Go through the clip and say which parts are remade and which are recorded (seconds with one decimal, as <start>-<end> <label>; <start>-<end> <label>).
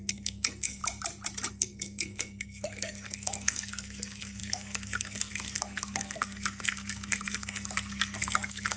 0.0-0.8 remade; 0.8-1.5 recorded; 1.5-8.8 remade